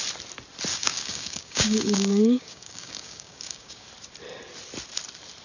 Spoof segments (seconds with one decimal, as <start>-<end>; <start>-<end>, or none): 0.7-3.9